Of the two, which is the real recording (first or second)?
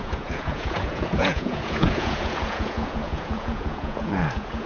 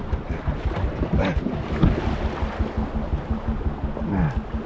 second